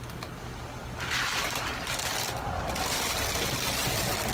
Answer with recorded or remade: recorded